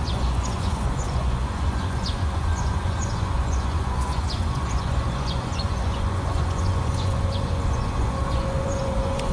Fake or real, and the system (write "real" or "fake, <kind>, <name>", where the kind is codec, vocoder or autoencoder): fake, vocoder, Vocos